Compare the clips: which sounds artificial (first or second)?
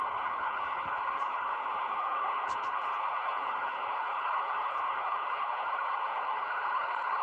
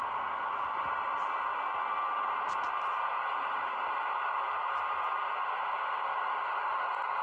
first